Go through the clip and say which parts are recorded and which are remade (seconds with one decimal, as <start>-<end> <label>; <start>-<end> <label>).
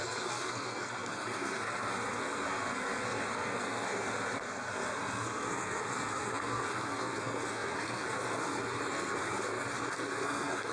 0.0-10.7 remade